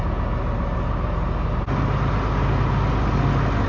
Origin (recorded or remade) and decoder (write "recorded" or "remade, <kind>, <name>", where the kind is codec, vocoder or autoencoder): recorded